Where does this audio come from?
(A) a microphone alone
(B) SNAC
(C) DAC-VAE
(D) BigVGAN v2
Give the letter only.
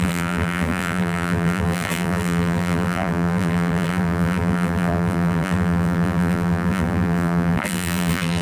D